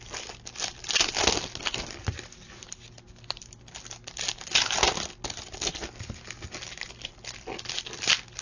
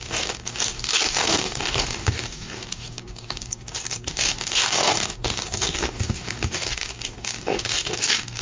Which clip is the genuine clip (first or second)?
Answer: first